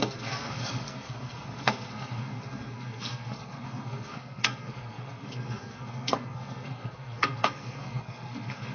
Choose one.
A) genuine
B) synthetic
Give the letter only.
B